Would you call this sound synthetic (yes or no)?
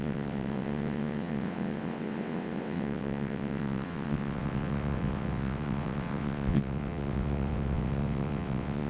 yes